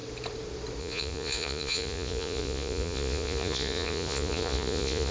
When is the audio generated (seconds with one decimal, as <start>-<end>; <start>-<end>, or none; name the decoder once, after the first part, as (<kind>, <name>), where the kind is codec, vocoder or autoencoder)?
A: 0.8-5.1 (vocoder, Vocos)